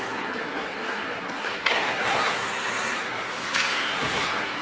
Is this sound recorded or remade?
remade